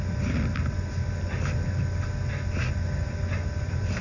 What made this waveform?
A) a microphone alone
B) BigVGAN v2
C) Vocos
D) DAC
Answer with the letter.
A